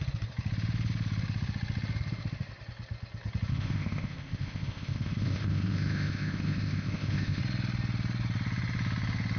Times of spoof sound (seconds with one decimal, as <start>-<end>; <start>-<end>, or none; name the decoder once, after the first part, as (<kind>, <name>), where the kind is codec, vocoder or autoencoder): 3.5-7.4 (codec, ZipCodec)

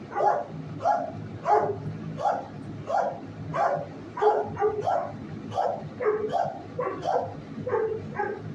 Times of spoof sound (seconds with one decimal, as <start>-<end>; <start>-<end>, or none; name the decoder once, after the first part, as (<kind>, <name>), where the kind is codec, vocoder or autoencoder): none